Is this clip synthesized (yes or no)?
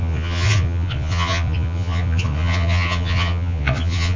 yes